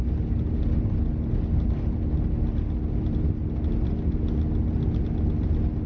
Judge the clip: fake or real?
real